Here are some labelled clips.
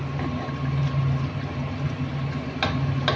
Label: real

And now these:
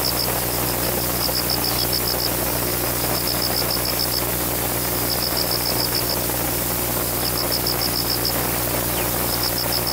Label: real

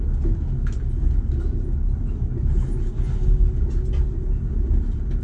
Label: real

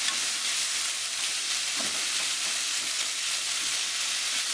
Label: real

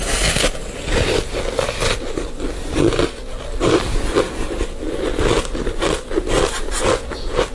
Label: real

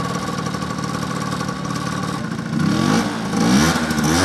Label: real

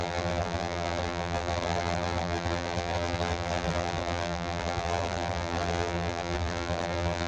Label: fake